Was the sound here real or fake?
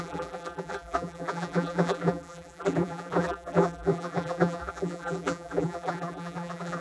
fake